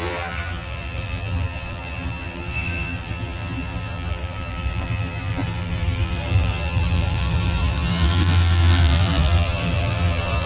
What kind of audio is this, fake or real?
fake